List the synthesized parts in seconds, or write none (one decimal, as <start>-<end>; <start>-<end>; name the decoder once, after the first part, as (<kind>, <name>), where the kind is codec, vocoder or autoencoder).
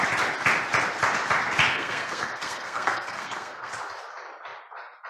1.7-3.7 (codec, SNAC)